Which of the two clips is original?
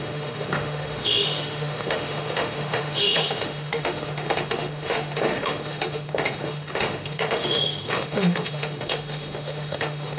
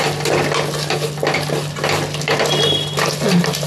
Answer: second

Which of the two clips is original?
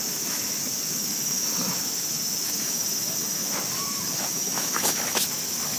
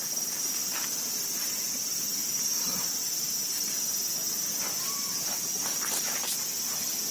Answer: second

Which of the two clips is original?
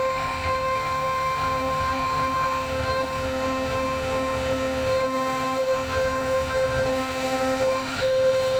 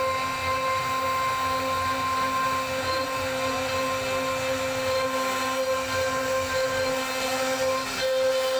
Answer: second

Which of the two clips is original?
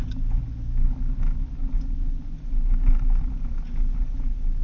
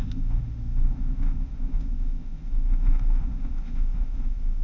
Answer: first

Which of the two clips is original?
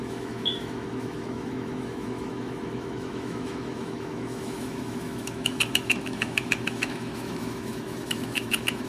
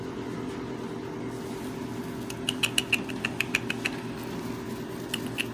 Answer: second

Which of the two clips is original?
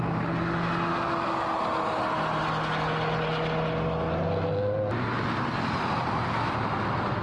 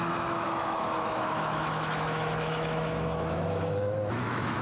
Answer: first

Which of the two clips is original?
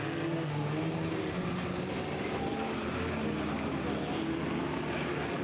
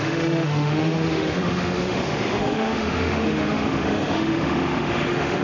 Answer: first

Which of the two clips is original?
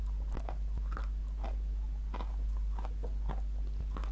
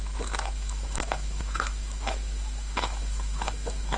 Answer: first